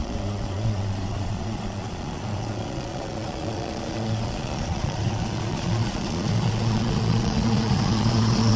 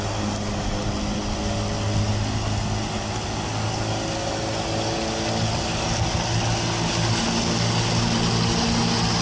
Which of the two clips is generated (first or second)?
first